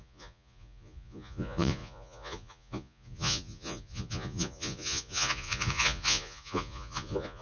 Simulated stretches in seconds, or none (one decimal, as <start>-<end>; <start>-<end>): 0.0-7.4